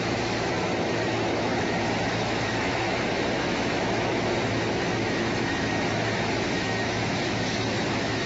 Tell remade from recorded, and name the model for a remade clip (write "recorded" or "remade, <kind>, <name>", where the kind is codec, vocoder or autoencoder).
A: remade, autoencoder, DAC-VAE